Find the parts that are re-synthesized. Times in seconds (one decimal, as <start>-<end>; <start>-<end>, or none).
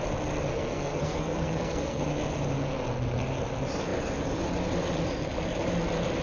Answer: 0.5-2.0